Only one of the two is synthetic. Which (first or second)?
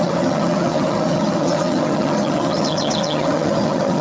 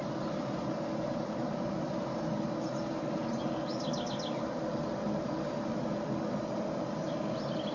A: first